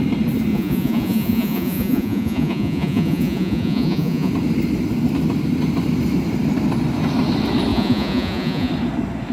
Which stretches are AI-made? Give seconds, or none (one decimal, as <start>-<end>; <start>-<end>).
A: 0.5-4.3; 7.7-8.7